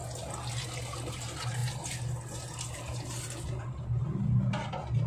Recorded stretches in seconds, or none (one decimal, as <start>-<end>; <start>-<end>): 0.0-5.1